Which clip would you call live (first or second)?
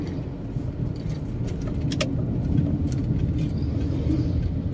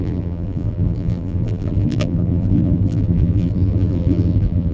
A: first